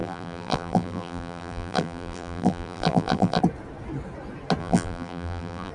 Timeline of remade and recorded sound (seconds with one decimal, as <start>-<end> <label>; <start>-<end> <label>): 0.0-3.4 remade; 3.4-4.6 recorded; 4.6-5.7 remade